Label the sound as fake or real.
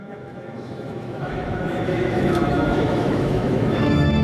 fake